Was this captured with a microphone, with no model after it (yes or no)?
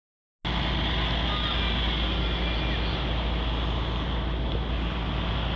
yes